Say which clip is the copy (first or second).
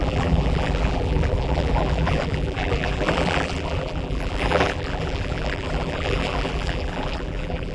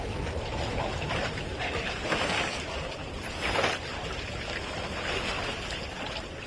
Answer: first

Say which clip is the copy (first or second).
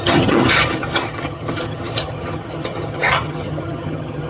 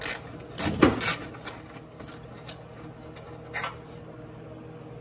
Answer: first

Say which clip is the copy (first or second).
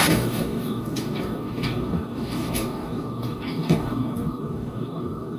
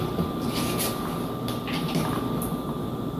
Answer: first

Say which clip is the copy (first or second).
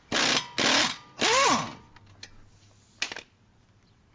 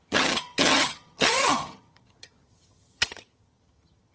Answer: second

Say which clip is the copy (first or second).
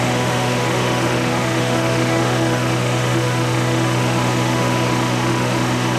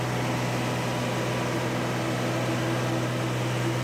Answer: first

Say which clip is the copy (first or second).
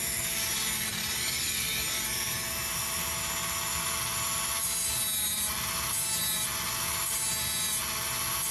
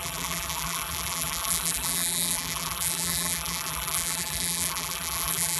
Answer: second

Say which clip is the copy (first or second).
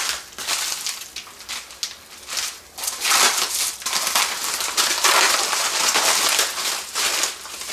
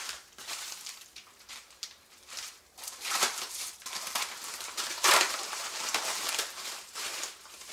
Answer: second